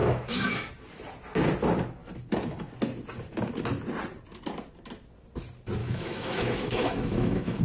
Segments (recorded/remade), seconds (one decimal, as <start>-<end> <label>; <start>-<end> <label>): 0.0-0.7 remade; 0.7-5.8 recorded; 5.8-7.6 remade